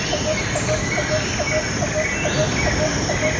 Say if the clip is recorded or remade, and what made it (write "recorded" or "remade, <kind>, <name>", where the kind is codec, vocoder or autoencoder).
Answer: recorded